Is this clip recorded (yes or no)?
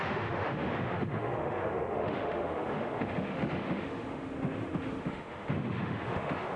no